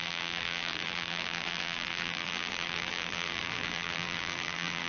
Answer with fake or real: fake